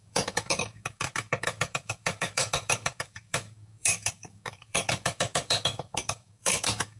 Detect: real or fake fake